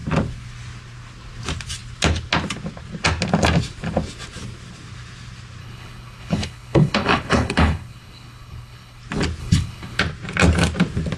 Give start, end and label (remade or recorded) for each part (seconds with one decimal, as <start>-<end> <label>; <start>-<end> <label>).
0.0-5.6 recorded; 5.6-9.0 remade; 9.0-9.4 recorded; 9.4-10.0 remade; 10.0-11.2 recorded